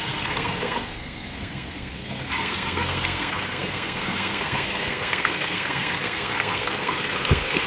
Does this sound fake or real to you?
fake